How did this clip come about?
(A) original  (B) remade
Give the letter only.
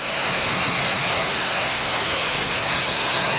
B